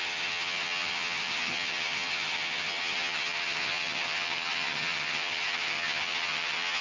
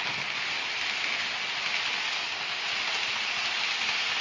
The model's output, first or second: first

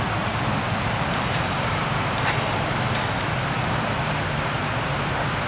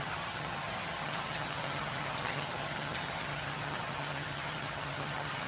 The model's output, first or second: second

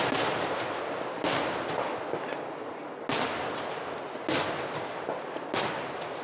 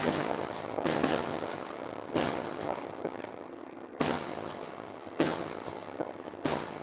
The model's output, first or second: second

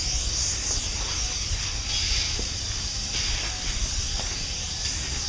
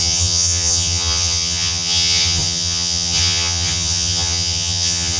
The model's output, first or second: second